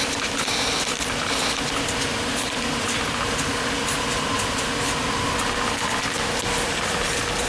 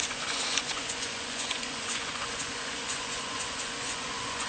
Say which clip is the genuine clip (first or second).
first